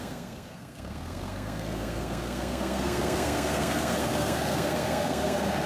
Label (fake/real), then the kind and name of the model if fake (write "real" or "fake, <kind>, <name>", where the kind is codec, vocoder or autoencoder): fake, codec, SNAC